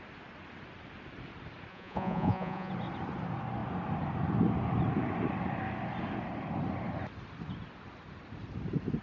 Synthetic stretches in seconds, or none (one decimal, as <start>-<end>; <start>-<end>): 1.7-2.7